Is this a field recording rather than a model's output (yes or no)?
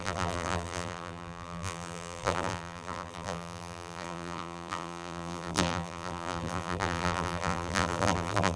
no